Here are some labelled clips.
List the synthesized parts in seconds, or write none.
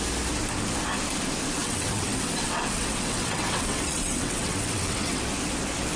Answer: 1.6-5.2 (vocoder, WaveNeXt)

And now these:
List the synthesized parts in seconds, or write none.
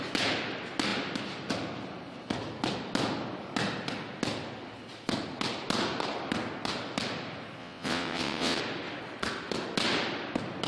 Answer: 7.6-8.6 (vocoder, WaveNeXt)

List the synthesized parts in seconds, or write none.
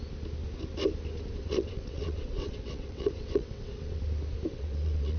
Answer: 1.4-4.0 (vocoder, WaveNeXt); 4.5-5.2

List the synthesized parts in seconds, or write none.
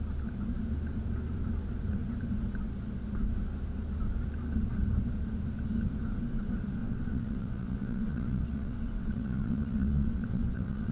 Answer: 6.8-10.9 (vocoder, WaveNeXt)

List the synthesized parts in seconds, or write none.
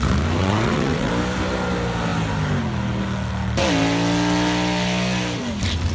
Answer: 0.4-1.1 (vocoder, WaveNeXt)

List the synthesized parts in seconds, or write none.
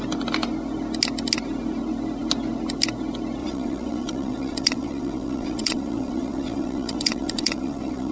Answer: 3.4-8.1 (vocoder, WaveNeXt)